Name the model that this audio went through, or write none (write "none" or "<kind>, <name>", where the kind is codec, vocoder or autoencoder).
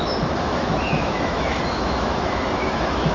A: autoencoder, DAC-VAE